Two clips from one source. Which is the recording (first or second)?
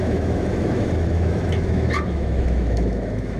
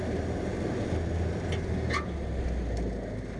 second